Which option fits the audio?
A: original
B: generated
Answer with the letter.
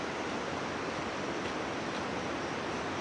A